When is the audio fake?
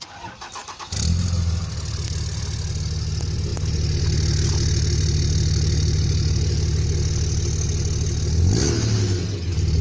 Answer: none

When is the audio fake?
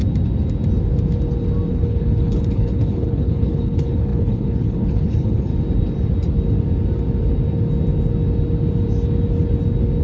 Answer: 1.7-5.5 (codec, HILCodec)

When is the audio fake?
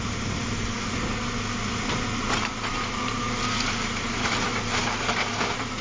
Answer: 0.0-1.1 (vocoder, BigVGAN v2); 2.7-5.8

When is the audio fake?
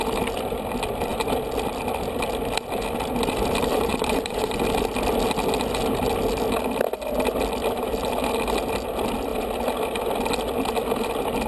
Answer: 3.7-4.6 (vocoder, BigVGAN v2)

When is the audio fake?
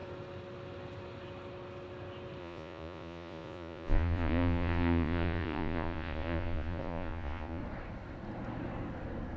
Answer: 2.4-7.6 (vocoder, Vocos)